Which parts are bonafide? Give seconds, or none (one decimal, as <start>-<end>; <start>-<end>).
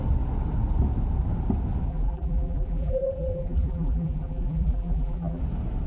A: 0.0-1.9; 5.4-5.9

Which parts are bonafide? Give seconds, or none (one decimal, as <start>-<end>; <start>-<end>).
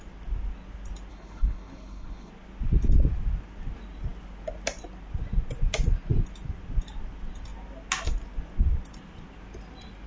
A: 0.0-1.1; 2.3-10.1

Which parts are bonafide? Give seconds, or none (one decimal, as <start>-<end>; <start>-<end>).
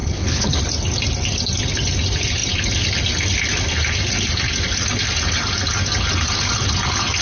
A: 0.6-7.2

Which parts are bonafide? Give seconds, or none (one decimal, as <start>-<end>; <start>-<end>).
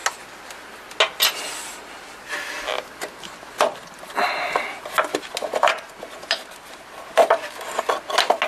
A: 0.0-8.5